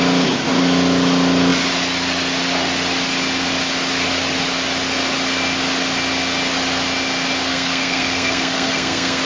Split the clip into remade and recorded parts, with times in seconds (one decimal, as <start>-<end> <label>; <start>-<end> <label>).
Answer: 0.0-7.5 recorded; 7.5-9.2 remade